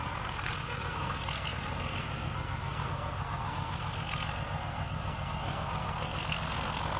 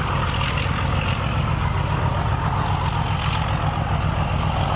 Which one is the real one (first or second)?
second